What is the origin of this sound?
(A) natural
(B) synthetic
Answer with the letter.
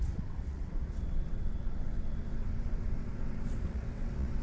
B